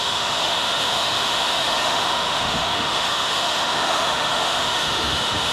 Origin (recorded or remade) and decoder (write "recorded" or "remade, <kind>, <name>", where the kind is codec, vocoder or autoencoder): remade, autoencoder, DAC-VAE